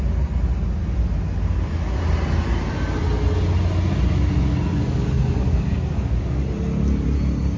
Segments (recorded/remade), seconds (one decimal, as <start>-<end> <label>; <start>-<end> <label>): 0.0-4.8 recorded; 4.8-6.4 remade; 6.4-7.6 recorded